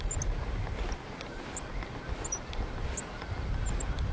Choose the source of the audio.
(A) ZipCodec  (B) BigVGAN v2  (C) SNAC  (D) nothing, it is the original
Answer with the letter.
D